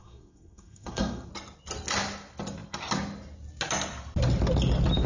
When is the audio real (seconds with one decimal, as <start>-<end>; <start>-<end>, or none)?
1.3-5.1